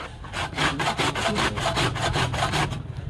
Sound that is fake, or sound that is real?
real